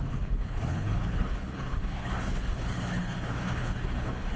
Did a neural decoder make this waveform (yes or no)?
yes